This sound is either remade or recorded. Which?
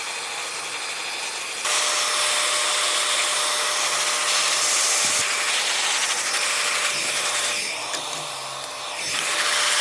recorded